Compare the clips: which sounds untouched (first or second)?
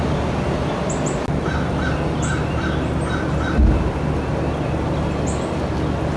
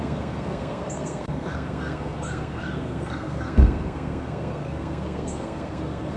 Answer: first